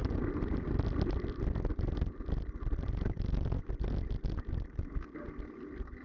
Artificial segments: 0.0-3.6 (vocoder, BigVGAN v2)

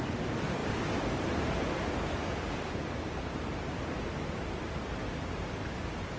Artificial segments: 0.6-3.3 (vocoder, BigVGAN v2)